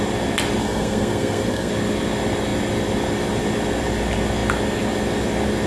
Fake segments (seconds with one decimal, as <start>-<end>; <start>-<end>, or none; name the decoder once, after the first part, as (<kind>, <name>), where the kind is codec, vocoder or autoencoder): 0.6-1.7 (codec, SNAC)

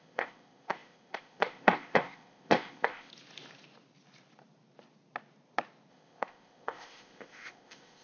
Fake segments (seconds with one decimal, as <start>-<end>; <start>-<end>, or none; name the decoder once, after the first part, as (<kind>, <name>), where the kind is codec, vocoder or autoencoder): 0.0-3.1 (codec, ZipCodec); 5.9-8.0

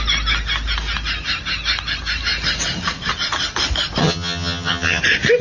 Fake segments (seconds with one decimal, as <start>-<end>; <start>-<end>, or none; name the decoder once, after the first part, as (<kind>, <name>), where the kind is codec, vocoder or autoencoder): 4.0-5.0 (vocoder, HiFi-GAN)

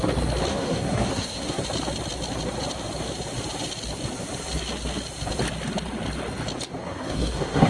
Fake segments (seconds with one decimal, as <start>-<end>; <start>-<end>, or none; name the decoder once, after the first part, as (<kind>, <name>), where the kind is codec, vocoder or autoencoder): 0.5-1.6 (codec, SNAC); 6.8-7.7

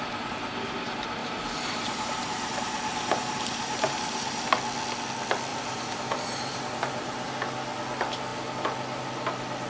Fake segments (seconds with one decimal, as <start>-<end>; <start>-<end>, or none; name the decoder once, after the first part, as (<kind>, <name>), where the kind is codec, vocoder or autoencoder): 1.2-4.5 (vocoder, BigVGAN v2); 5.5-7.3

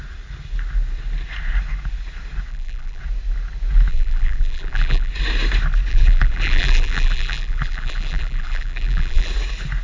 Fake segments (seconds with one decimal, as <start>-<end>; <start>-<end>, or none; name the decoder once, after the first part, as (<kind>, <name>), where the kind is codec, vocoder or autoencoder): 2.5-3.0 (vocoder, BigVGAN v2); 3.9-5.1; 5.9-9.3

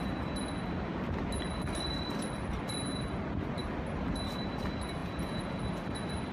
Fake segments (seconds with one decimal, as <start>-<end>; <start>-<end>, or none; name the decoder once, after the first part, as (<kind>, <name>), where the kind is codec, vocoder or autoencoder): 5.0-5.6 (vocoder, Vocos)

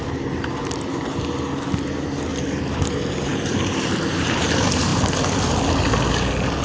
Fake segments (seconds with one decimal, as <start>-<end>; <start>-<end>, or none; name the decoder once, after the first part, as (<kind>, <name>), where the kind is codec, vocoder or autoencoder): 2.3-2.8 (vocoder, BigVGAN v2)